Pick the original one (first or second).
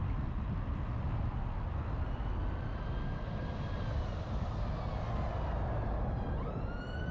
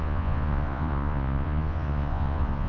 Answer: first